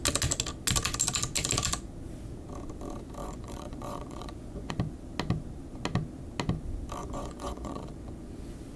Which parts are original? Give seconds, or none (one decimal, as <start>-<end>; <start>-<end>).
0.0-3.2; 4.7-7.0; 8.3-8.8